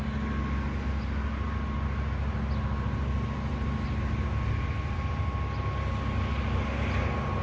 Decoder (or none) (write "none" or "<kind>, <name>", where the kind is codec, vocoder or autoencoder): none